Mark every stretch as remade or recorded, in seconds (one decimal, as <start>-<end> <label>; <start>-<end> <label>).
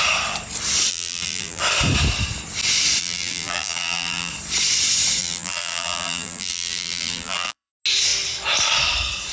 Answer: 0.0-0.9 recorded; 0.9-1.6 remade; 1.6-3.0 recorded; 3.0-4.3 remade; 4.3-5.2 recorded; 5.2-7.7 remade; 7.7-9.3 recorded